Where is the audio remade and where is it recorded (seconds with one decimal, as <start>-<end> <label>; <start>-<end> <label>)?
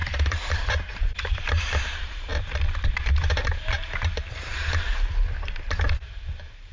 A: 0.0-6.7 remade